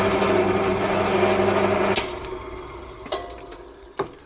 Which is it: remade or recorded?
recorded